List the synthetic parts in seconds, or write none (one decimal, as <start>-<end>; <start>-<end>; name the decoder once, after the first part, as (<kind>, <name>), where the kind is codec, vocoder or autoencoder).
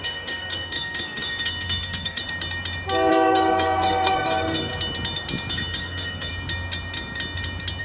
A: 0.0-2.2 (codec, SNAC); 3.1-4.7; 5.5-6.3